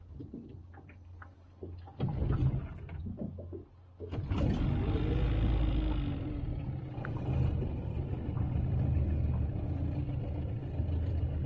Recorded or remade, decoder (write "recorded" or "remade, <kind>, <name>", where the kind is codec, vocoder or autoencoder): recorded